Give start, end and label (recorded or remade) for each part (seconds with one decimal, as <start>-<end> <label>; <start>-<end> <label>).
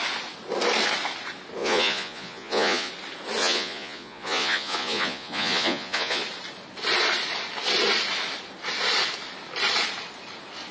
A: 0.0-1.6 recorded; 1.6-2.9 remade; 2.9-3.4 recorded; 3.4-6.2 remade; 6.2-10.7 recorded